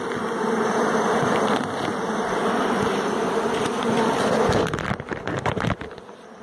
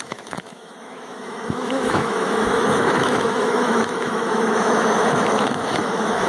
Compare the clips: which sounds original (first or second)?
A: first